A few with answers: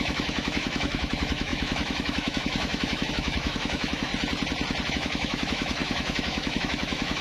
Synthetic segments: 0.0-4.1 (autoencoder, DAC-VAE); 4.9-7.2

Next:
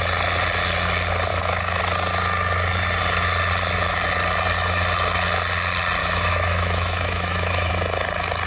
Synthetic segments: 1.3-1.8 (autoencoder, DAC-VAE); 6.0-7.7

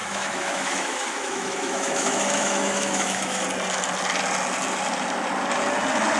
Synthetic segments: 0.0-3.4 (autoencoder, DAC-VAE)

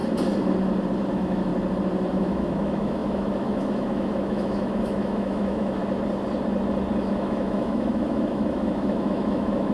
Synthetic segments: 1.1-1.5 (autoencoder, DAC-VAE); 2.1-5.8; 7.0-9.7

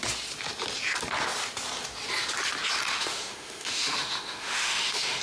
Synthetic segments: 2.9-5.2 (autoencoder, DAC-VAE)

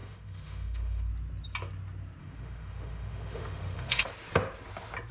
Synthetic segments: 0.0-1.1 (autoencoder, DAC-VAE); 2.2-4.1